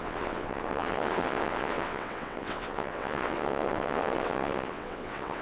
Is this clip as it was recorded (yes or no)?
no